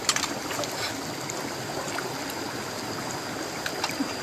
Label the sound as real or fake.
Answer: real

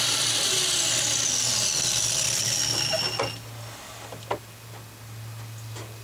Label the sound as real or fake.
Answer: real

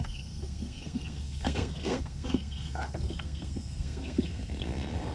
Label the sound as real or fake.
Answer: fake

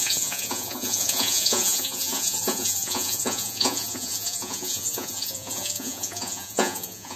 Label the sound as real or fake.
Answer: fake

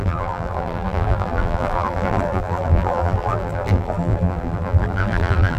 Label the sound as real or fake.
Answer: fake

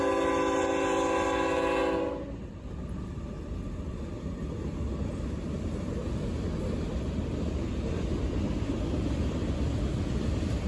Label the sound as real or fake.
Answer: real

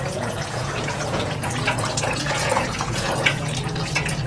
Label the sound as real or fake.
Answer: fake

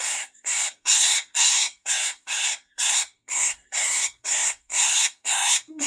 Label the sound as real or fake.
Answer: fake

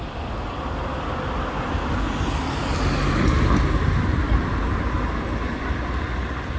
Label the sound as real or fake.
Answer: real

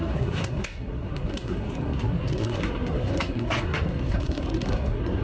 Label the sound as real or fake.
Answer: fake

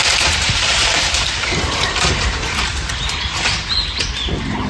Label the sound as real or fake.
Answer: real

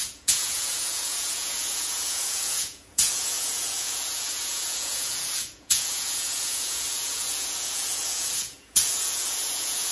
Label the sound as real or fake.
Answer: fake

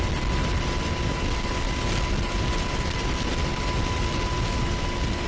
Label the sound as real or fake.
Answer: real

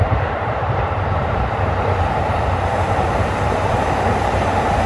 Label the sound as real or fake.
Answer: fake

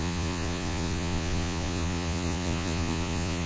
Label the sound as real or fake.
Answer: fake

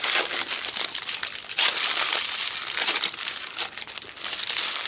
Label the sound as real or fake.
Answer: real